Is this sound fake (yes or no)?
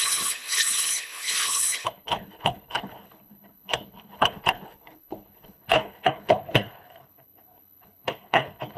yes